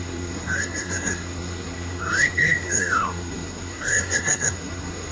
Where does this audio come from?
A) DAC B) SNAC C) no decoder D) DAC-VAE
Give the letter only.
B